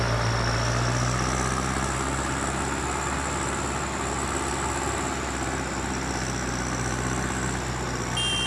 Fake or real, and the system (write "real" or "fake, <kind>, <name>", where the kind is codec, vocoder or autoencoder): real